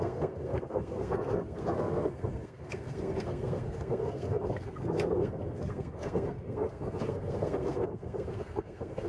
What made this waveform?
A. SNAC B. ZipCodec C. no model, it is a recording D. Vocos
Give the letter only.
A